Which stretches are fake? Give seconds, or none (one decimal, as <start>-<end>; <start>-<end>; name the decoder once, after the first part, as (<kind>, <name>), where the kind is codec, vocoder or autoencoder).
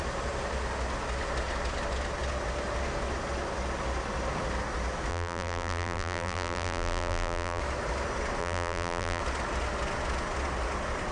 5.1-7.6 (vocoder, BigVGAN v2); 8.4-9.2